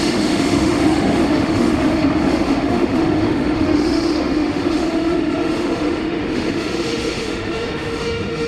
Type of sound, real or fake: fake